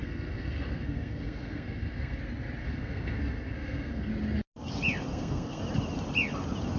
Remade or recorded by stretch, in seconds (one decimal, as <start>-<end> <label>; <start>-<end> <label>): 0.0-2.2 remade; 2.2-2.6 recorded; 2.6-4.1 remade; 4.1-5.1 recorded; 5.1-5.6 remade; 5.6-6.8 recorded